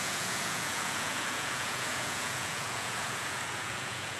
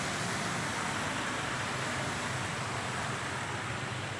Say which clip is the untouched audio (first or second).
second